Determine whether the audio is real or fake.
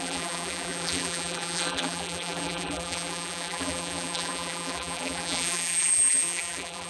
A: fake